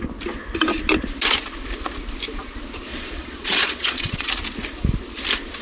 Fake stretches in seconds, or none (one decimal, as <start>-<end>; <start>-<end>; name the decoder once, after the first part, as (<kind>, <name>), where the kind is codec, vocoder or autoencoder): 2.9-4.3 (vocoder, Vocos)